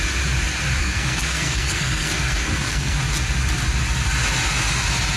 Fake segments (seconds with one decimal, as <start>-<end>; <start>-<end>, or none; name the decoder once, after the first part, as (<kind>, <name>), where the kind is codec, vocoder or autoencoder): 0.8-3.0 (codec, SNAC)